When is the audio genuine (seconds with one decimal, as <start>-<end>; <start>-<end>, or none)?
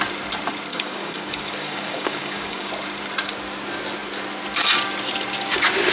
0.0-0.7; 2.7-5.9